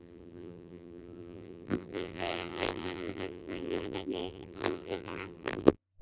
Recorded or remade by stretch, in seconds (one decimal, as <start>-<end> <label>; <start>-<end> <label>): 0.0-6.0 remade